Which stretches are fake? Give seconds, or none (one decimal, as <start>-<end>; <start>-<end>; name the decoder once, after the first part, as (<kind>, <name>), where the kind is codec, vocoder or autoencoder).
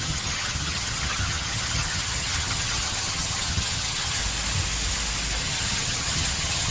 0.0-4.2 (vocoder, HiFi-GAN); 5.4-6.7